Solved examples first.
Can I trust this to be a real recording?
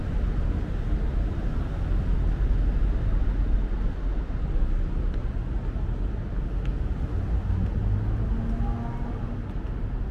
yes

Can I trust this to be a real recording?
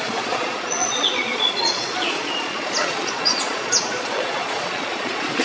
no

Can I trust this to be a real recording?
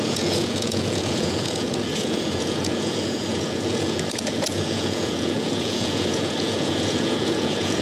no